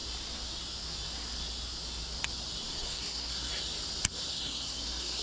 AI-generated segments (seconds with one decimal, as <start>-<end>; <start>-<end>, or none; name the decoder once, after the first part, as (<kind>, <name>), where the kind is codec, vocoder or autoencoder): 2.7-3.5 (codec, SNAC); 4.3-5.2